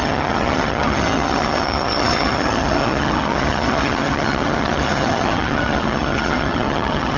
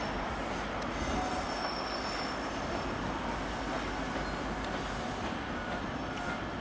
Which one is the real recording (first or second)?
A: second